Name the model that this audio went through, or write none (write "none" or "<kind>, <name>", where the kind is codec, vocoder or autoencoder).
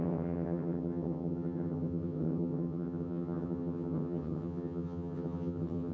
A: vocoder, HiFi-GAN